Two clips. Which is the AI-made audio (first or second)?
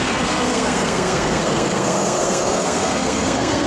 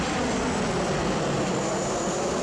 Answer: first